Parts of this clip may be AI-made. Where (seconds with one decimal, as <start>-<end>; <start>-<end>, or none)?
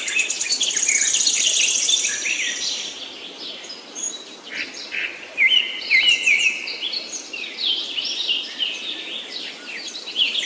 0.0-10.5